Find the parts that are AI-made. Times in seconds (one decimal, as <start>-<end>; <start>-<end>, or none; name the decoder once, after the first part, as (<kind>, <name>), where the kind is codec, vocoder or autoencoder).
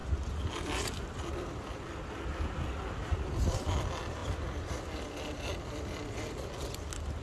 none